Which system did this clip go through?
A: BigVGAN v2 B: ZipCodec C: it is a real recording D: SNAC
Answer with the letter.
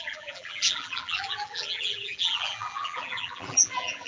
A